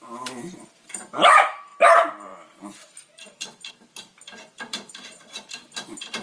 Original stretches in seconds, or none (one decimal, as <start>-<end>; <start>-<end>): none